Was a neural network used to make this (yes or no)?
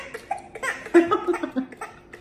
no